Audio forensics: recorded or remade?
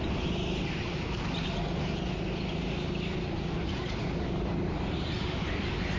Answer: recorded